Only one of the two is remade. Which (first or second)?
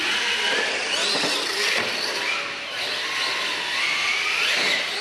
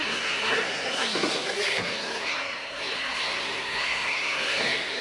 second